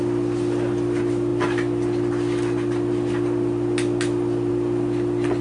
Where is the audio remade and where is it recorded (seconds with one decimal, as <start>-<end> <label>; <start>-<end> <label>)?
0.0-5.4 recorded